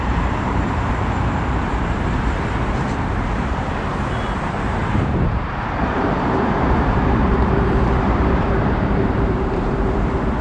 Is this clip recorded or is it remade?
remade